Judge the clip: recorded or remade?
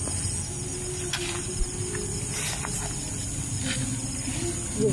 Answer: recorded